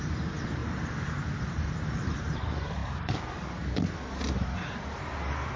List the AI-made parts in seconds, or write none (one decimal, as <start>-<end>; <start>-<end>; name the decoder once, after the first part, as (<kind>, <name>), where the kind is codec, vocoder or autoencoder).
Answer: 0.0-0.6 (vocoder, BigVGAN v2); 1.9-3.6; 4.3-5.6